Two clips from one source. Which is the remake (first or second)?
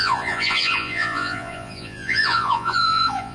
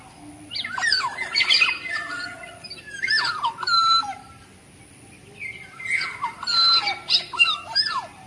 first